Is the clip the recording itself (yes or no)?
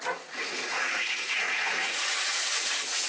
no